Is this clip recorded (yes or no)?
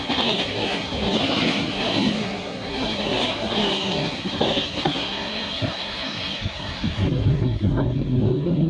no